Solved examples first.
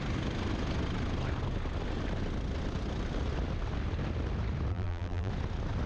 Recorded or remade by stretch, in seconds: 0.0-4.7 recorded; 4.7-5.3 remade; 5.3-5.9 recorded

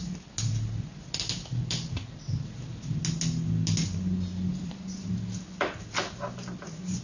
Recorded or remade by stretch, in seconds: 0.0-4.5 recorded; 4.5-5.2 remade; 5.2-7.0 recorded

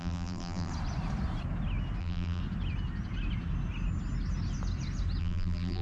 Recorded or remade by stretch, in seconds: 0.0-0.7 remade; 0.7-2.0 recorded; 2.0-2.4 remade; 2.4-5.2 recorded; 5.2-5.8 remade

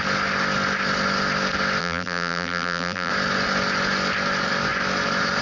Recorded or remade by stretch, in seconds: 0.0-1.8 recorded; 1.8-3.1 remade; 3.1-5.4 recorded